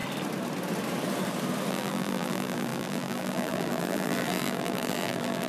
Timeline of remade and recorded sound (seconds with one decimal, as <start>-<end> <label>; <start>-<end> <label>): 0.0-1.7 recorded; 1.7-5.5 remade